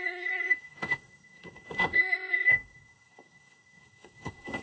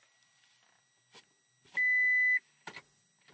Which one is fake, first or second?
first